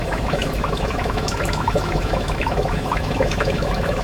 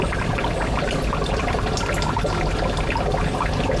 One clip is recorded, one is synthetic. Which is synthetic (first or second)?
first